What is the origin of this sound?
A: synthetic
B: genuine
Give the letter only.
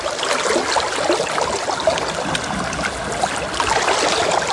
B